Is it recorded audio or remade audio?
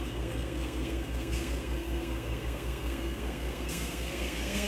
remade